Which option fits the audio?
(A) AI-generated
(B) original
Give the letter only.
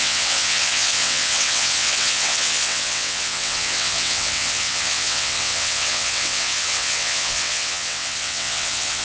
A